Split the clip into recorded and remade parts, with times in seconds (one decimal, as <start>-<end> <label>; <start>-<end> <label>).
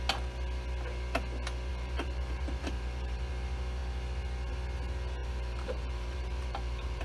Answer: 0.0-1.7 recorded; 1.7-3.3 remade; 3.3-5.2 recorded; 5.2-7.0 remade